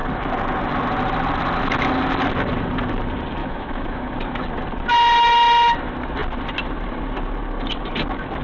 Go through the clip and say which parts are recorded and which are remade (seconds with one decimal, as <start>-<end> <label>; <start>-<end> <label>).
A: 0.0-3.4 recorded; 3.4-4.1 remade; 4.1-8.4 recorded